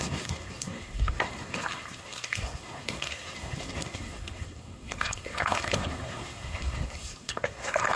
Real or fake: fake